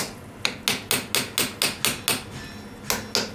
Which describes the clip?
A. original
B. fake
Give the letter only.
A